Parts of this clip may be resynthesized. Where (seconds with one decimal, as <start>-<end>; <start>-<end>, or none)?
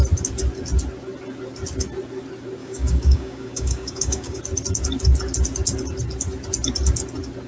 2.6-4.4